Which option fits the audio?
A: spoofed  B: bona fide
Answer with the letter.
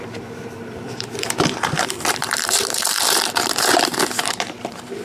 A